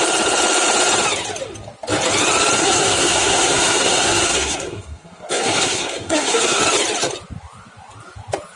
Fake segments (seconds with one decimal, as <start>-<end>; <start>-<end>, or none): 2.6-6.6